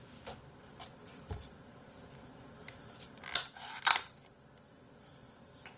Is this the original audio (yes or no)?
no